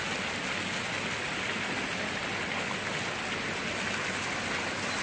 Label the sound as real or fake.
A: real